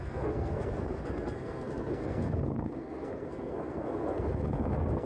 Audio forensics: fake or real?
fake